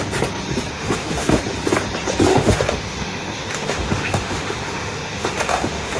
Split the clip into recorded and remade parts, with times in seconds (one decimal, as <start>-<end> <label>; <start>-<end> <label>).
0.0-0.7 recorded; 0.7-1.4 remade; 1.4-2.3 recorded; 2.3-6.0 remade